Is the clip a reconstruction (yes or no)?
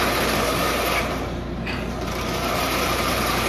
yes